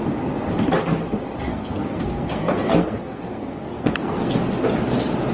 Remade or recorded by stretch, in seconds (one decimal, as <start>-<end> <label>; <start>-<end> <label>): 0.0-1.5 recorded; 1.5-4.4 remade; 4.4-5.3 recorded